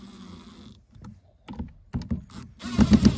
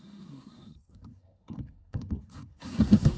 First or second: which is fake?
second